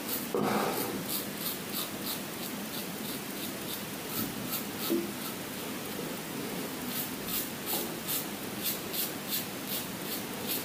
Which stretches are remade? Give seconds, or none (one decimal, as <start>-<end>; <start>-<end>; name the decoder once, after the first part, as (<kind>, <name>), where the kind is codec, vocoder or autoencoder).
2.8-3.4 (vocoder, BigVGAN v2)

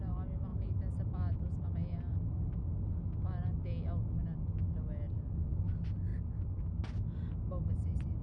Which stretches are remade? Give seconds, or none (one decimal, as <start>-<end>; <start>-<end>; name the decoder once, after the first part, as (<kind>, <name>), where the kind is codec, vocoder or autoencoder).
0.5-1.7 (vocoder, BigVGAN v2)

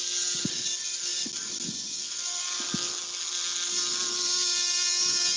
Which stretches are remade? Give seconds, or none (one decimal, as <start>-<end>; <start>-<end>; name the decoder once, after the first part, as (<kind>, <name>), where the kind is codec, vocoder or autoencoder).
none

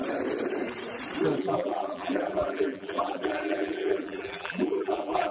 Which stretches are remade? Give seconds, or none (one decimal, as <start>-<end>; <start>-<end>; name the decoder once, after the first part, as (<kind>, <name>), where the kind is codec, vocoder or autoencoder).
1.4-5.3 (vocoder, BigVGAN v2)

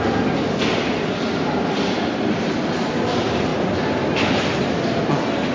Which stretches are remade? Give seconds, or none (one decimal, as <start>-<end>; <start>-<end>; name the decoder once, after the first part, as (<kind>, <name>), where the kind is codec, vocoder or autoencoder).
none

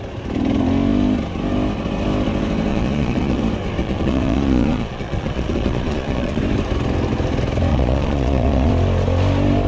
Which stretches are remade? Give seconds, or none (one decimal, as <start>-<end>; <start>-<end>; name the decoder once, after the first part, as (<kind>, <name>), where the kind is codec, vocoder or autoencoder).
2.7-3.4 (vocoder, Vocos); 3.8-6.4; 7.7-8.7

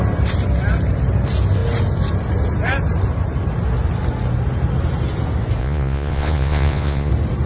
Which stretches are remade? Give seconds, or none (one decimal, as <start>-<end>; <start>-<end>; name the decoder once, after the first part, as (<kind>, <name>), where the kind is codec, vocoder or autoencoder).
5.6-7.1 (vocoder, Vocos)

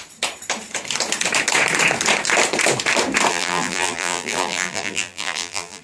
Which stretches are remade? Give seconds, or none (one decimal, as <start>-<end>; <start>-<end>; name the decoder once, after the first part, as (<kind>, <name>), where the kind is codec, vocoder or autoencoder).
3.3-5.8 (vocoder, BigVGAN v2)